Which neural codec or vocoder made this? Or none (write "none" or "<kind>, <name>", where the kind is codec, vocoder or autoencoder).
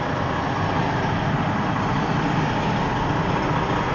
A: none